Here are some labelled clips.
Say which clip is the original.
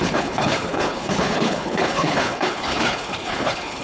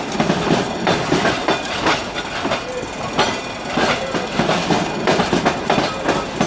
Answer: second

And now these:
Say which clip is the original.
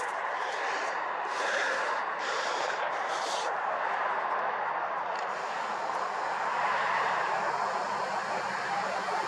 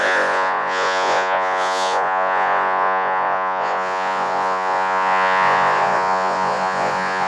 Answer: first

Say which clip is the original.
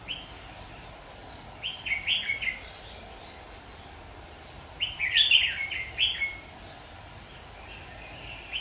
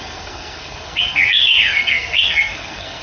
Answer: first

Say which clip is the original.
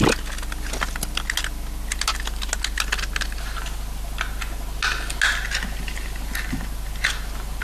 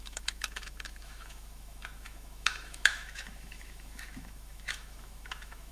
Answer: first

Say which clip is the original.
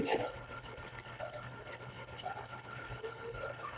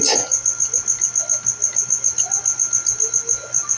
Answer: second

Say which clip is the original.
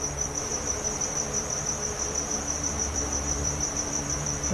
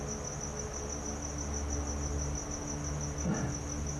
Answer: second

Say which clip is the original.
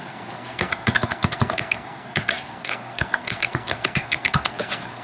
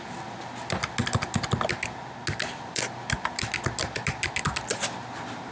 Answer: second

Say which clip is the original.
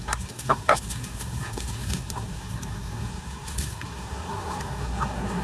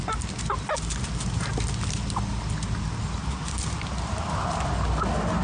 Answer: second